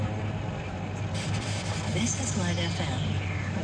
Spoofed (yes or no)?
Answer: no